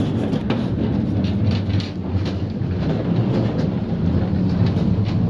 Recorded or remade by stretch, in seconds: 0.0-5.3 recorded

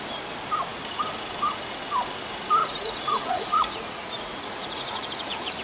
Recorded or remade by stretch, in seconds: 0.0-2.6 recorded; 2.6-5.6 remade

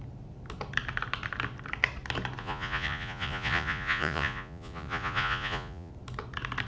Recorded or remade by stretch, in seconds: 0.0-2.4 recorded; 2.4-5.9 remade; 5.9-6.7 recorded

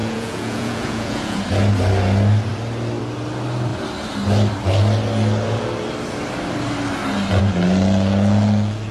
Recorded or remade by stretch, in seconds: 0.0-1.4 remade; 1.4-8.9 recorded

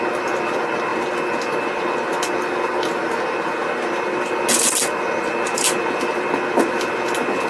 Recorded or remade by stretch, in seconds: 0.0-7.5 recorded

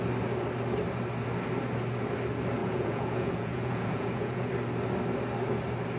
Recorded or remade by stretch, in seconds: 0.0-2.6 recorded; 2.6-4.5 remade; 4.5-6.0 recorded